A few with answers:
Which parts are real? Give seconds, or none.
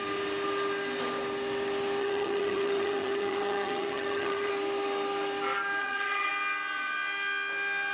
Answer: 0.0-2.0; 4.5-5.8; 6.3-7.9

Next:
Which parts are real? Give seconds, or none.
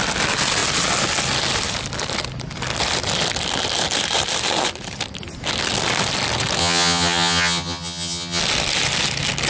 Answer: 0.0-6.6; 8.4-9.5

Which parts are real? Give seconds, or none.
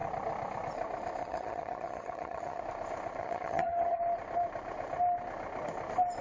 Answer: 0.0-1.2; 2.6-3.2; 4.0-6.2